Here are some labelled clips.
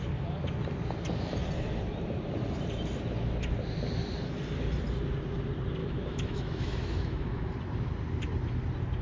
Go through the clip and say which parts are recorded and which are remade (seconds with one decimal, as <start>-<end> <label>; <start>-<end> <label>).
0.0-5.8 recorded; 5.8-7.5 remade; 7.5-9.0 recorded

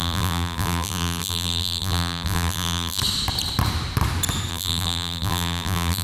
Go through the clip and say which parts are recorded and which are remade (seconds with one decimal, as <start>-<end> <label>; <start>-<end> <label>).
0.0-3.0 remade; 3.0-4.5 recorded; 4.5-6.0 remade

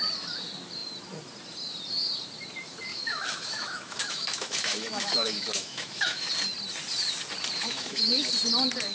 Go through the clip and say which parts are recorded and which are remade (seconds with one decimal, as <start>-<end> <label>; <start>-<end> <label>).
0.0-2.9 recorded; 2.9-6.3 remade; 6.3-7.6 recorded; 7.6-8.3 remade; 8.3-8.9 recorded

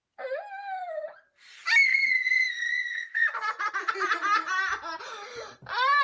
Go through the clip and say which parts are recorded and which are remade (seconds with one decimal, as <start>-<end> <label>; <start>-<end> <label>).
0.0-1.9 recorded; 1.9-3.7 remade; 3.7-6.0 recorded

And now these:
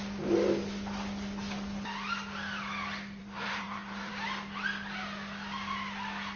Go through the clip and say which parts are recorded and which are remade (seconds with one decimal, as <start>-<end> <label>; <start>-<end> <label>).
0.0-3.2 recorded; 3.2-4.1 remade; 4.1-6.4 recorded

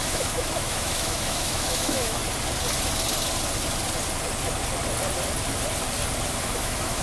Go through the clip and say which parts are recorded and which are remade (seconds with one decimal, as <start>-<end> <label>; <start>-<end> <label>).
0.0-2.2 remade; 2.2-6.4 recorded; 6.4-7.0 remade

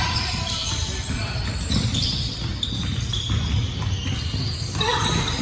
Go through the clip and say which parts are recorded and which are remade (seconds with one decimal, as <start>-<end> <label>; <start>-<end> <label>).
0.0-2.5 remade; 2.5-4.4 recorded; 4.4-5.4 remade

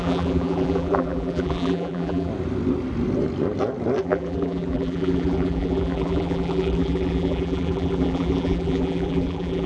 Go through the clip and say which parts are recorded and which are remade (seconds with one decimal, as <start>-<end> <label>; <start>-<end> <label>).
0.0-2.3 remade; 2.3-4.0 recorded; 4.0-9.7 remade